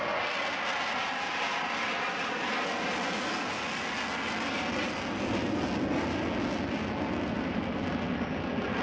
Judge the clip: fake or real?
real